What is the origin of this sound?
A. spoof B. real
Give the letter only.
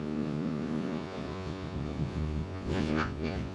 A